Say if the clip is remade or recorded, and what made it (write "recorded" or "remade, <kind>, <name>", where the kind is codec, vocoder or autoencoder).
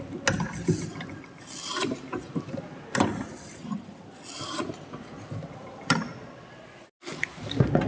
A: recorded